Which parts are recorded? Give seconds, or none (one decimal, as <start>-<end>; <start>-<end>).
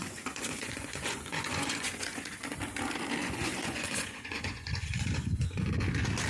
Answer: 2.6-3.2; 5.7-6.3